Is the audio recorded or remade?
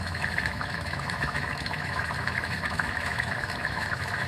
remade